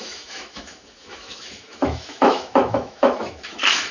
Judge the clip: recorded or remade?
remade